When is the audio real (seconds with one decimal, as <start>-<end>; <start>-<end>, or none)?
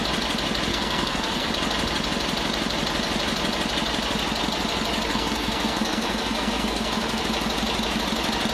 0.0-0.7; 1.5-5.1; 7.2-8.5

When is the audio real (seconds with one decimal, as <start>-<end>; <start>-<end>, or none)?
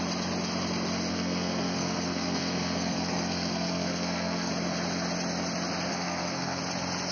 0.0-1.1; 4.5-5.9; 6.6-7.1